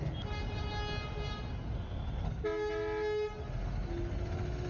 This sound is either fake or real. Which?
real